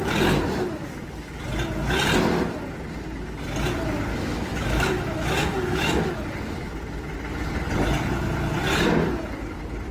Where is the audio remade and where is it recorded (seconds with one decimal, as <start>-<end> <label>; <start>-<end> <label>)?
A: 0.0-4.1 recorded; 4.1-6.1 remade; 6.1-9.9 recorded